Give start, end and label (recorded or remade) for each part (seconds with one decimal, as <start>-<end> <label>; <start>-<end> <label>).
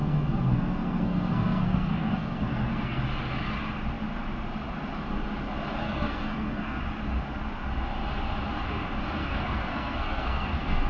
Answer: 0.0-3.0 remade; 3.0-5.8 recorded; 5.8-6.8 remade; 6.8-9.2 recorded; 9.2-10.9 remade